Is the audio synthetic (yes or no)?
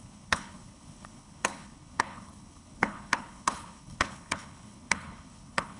yes